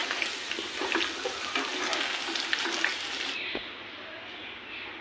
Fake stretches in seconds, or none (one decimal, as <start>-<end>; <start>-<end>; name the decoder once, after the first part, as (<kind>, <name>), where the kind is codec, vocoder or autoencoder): none